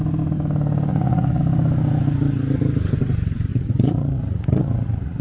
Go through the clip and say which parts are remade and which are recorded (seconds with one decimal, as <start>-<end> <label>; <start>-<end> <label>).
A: 0.0-0.9 recorded; 0.9-1.4 remade; 1.4-3.5 recorded; 3.5-5.2 remade